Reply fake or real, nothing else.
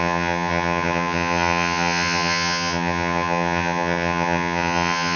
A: fake